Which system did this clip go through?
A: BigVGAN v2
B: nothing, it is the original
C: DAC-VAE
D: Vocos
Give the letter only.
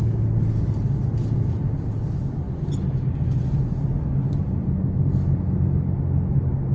B